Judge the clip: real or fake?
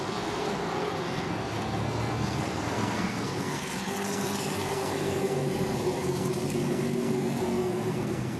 fake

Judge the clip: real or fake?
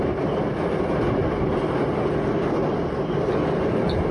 real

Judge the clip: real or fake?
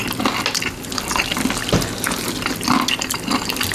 real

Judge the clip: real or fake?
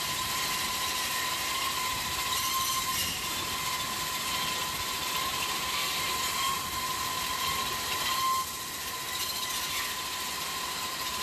real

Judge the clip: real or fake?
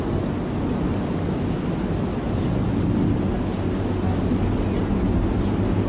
real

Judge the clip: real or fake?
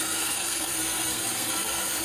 fake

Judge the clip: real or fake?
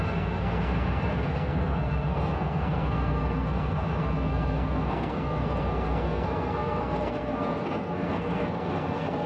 fake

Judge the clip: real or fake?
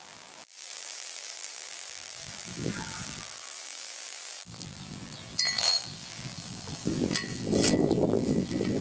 fake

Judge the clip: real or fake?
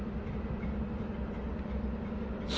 real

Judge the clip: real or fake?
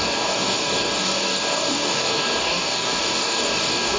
fake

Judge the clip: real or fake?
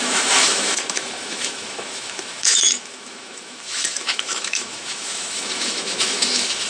fake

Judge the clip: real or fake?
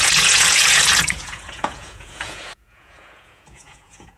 fake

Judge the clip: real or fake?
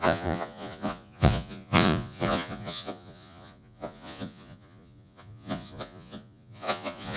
fake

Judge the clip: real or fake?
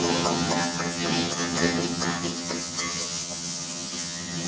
fake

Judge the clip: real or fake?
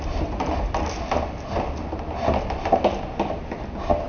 real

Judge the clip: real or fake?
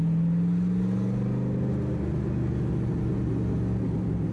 real